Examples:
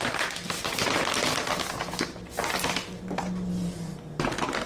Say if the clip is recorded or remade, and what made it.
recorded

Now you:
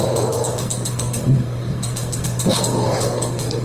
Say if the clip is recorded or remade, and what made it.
remade, codec, SNAC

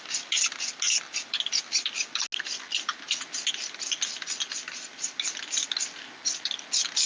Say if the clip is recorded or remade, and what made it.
recorded